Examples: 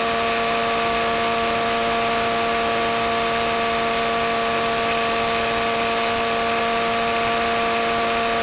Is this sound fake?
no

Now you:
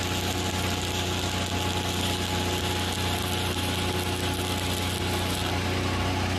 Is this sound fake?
no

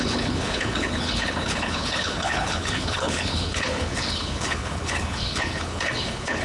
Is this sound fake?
yes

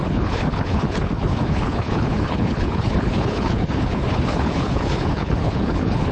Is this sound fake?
yes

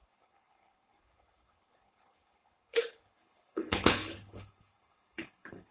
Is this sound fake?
yes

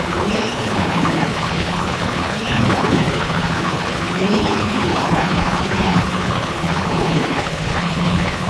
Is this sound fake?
yes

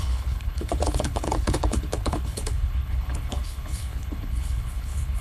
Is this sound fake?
yes